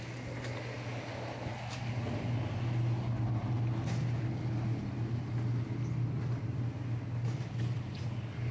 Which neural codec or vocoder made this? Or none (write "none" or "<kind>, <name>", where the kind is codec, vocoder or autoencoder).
none